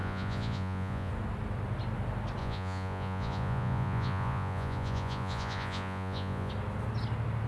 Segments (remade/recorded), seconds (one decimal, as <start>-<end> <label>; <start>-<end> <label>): 0.0-1.1 remade; 1.1-2.4 recorded; 2.4-6.5 remade; 6.5-7.5 recorded